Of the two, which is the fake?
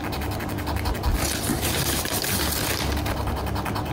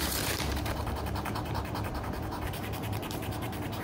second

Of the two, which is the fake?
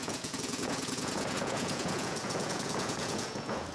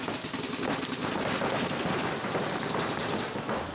first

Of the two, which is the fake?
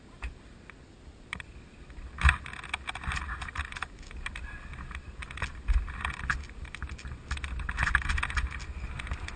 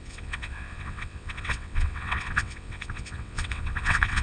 second